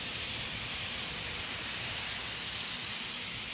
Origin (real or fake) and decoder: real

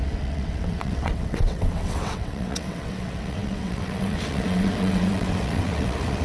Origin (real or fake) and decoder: fake, vocoder, WaveNeXt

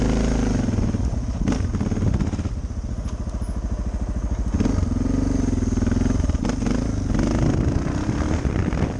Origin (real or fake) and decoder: real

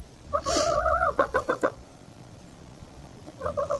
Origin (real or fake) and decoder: fake, vocoder, Vocos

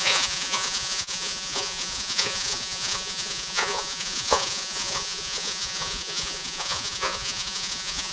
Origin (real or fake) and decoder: fake, vocoder, Vocos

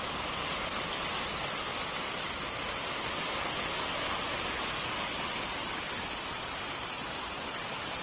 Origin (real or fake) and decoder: real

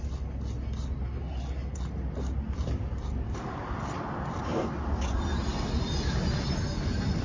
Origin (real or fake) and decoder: real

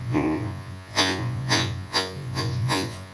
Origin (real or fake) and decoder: fake, vocoder, Vocos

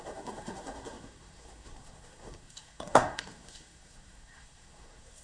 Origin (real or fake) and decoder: fake, codec, SNAC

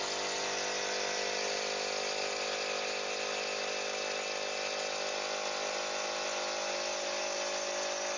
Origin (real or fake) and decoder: real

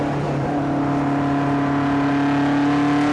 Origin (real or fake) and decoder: real